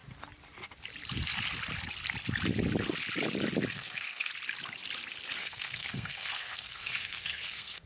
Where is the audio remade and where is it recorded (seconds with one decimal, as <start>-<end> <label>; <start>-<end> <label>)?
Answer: 0.0-3.7 recorded; 3.7-4.3 remade; 4.3-5.4 recorded; 5.4-7.9 remade

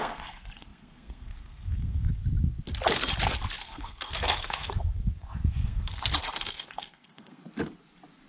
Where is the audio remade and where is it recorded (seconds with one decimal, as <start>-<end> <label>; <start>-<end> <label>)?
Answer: 0.0-2.2 remade; 2.2-3.6 recorded; 3.6-7.4 remade; 7.4-8.3 recorded